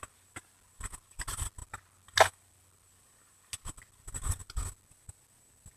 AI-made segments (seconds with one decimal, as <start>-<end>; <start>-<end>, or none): none